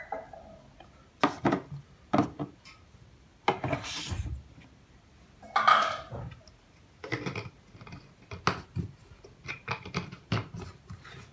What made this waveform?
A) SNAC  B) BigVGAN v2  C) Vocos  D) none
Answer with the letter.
D